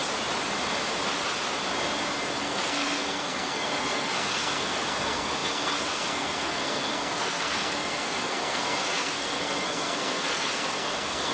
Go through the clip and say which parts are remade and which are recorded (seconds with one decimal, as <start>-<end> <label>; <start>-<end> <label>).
0.0-2.4 recorded; 2.4-11.3 remade